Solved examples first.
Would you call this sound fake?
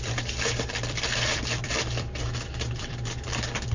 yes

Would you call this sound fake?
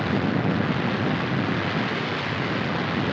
no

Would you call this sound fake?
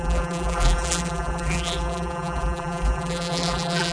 yes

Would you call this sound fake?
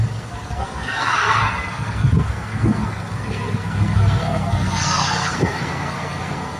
yes